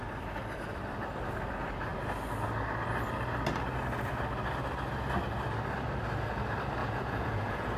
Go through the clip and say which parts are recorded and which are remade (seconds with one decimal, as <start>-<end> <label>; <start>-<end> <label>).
0.0-6.8 recorded; 6.8-7.8 remade